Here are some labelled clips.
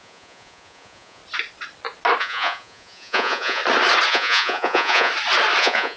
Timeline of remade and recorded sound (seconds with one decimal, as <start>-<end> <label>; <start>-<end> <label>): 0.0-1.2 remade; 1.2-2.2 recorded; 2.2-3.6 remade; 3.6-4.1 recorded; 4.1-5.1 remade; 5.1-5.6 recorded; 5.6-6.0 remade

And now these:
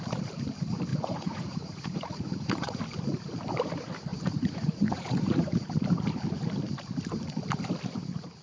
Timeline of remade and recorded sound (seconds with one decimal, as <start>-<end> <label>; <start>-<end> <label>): 0.0-0.9 recorded; 0.9-2.8 remade; 2.8-4.1 recorded; 4.1-5.7 remade; 5.7-8.4 recorded

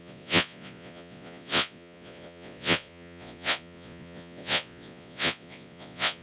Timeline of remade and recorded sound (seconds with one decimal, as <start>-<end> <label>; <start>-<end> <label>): 0.0-6.2 remade

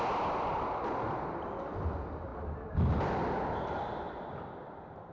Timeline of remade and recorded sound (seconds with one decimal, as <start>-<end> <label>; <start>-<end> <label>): 0.0-5.1 recorded

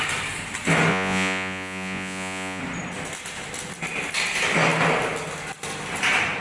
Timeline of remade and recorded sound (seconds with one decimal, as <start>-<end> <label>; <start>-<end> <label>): 0.0-0.9 recorded; 0.9-2.6 remade; 2.6-6.4 recorded